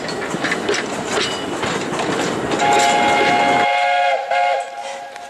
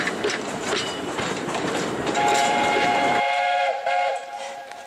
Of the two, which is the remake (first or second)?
second